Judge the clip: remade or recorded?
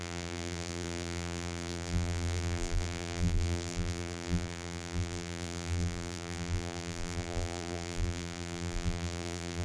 remade